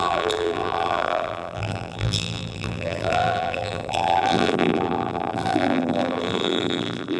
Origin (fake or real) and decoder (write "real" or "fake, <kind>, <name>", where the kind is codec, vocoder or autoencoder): fake, vocoder, BigVGAN v2